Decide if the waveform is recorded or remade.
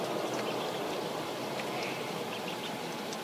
recorded